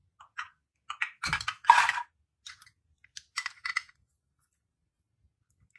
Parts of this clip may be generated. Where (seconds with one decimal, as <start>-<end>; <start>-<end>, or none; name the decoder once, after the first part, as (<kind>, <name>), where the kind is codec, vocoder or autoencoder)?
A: none